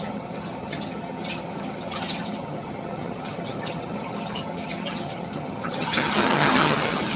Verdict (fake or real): fake